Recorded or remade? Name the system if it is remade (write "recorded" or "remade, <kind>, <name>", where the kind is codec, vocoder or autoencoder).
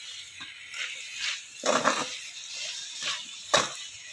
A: recorded